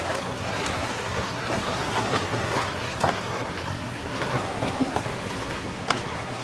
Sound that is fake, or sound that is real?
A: fake